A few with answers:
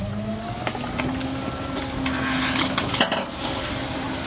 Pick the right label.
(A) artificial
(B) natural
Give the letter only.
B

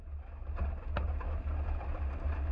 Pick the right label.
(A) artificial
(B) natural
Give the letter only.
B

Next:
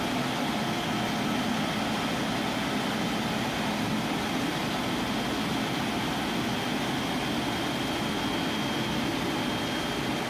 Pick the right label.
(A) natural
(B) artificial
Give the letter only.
A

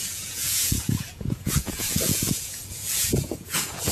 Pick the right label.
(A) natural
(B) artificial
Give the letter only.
B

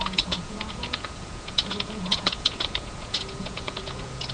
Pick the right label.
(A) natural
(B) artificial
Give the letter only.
B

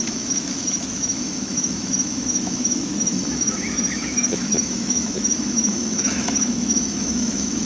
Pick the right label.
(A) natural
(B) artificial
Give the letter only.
B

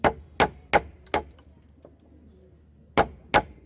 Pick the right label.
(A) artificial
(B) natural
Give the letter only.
B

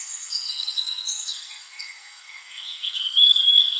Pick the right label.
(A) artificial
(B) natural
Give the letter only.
A